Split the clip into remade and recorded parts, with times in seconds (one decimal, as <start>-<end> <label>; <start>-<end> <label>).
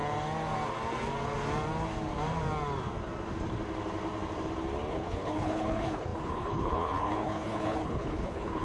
0.0-4.9 recorded; 4.9-8.6 remade